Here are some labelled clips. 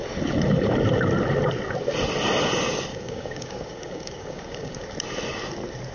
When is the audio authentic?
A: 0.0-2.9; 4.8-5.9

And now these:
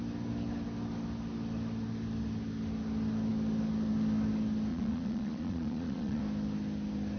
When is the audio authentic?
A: 0.0-4.7; 6.2-7.2

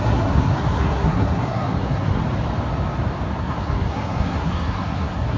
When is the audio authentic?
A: 2.2-3.4